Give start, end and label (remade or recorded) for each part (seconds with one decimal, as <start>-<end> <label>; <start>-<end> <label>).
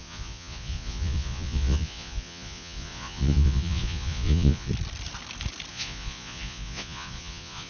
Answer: 0.0-4.7 remade; 4.7-5.7 recorded; 5.7-7.7 remade